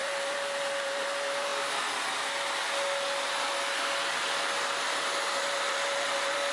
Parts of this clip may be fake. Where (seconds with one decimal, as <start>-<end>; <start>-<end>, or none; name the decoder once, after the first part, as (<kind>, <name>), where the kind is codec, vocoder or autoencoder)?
0.0-1.5 (vocoder, BigVGAN v2); 5.4-6.5